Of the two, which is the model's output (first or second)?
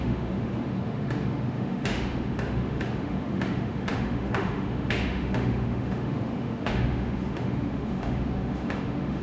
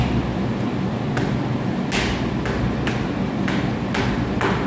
first